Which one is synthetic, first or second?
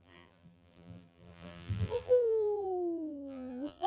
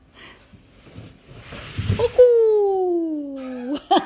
first